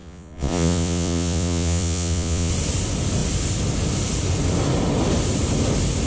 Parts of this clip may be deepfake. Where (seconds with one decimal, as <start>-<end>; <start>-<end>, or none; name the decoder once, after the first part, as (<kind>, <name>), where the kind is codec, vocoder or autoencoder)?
0.0-2.5 (vocoder, Vocos)